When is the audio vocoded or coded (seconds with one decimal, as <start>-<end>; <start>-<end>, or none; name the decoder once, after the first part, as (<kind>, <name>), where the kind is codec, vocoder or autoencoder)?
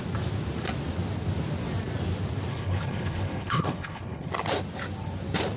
2.5-4.3 (codec, HILCodec)